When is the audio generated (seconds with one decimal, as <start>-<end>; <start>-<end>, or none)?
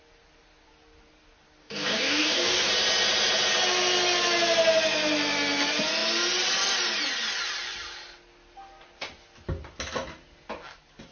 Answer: 1.6-2.7